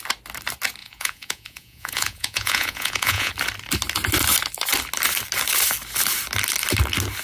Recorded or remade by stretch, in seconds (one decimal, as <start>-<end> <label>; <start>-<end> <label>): 0.0-0.8 recorded; 0.8-3.3 remade; 3.3-7.2 recorded